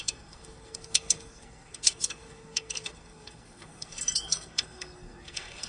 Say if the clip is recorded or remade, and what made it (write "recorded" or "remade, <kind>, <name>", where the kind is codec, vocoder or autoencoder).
remade, codec, SNAC